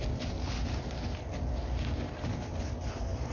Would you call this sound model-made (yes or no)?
no